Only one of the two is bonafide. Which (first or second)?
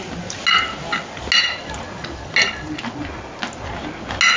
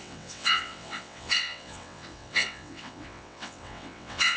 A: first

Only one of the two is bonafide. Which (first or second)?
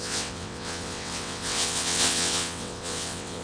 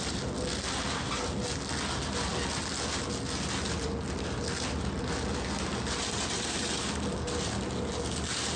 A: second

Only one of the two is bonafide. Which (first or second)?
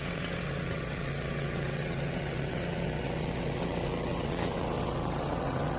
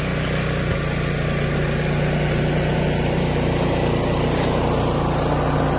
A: second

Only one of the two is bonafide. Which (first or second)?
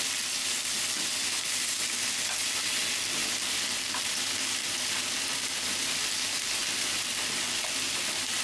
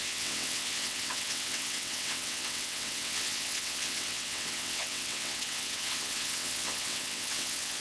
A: first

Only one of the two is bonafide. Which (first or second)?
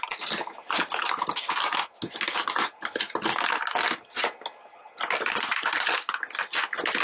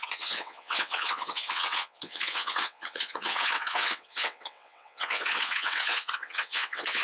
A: first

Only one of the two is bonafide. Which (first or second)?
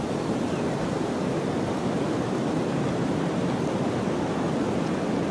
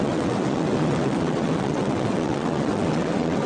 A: first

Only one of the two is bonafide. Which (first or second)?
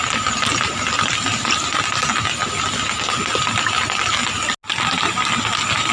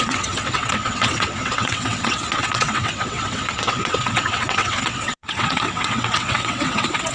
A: first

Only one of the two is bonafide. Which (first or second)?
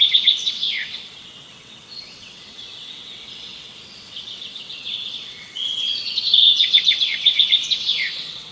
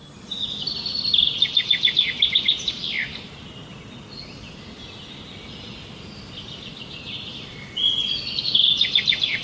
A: second